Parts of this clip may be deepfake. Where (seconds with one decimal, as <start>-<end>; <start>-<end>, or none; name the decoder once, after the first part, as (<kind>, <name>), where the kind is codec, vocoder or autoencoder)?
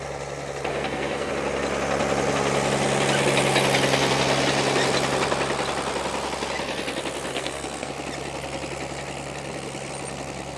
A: 0.7-1.3 (codec, SNAC); 7.3-7.9